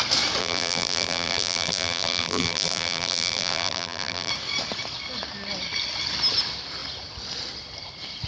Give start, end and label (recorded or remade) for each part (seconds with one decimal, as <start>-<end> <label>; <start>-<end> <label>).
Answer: 0.0-0.4 recorded; 0.4-4.3 remade; 4.3-8.3 recorded